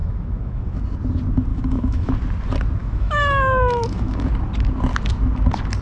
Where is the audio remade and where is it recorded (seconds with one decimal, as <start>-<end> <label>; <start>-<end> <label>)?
0.0-0.8 remade; 0.8-1.5 recorded; 1.5-2.1 remade; 2.1-2.8 recorded; 2.8-4.3 remade; 4.3-5.8 recorded